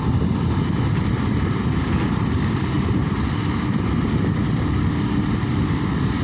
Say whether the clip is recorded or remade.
recorded